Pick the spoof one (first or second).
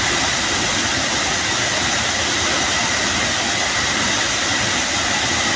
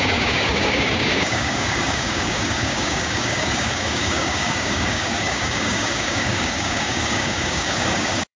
second